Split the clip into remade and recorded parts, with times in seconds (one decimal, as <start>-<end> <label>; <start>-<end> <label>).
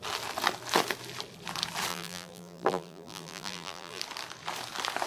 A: 0.0-1.9 recorded; 1.9-4.0 remade; 4.0-5.1 recorded